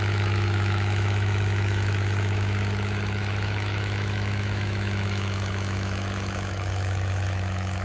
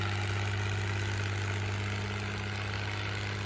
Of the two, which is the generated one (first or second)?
first